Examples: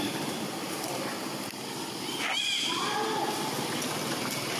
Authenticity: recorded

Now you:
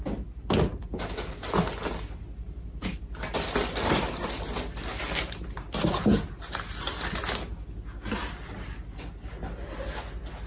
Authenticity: recorded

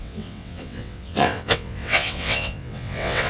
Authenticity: remade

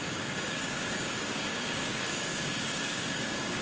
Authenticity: remade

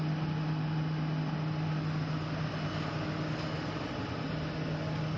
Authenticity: recorded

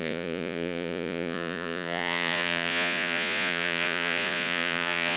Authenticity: remade